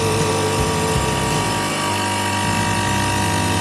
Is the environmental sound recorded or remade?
recorded